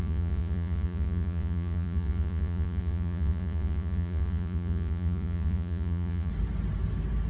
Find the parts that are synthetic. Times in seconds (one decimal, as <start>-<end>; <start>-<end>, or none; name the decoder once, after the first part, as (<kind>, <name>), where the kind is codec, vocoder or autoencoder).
0.0-6.3 (vocoder, Vocos)